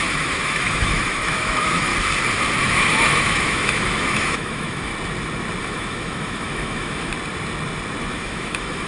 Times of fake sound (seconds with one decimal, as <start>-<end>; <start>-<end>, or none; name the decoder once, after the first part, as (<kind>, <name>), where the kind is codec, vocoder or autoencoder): 0.0-1.9 (autoencoder, DAC-VAE); 2.6-4.9; 5.6-7.1; 8.1-8.9